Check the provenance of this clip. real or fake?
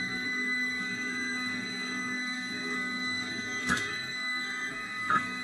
fake